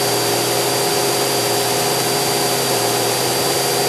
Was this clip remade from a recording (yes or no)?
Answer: no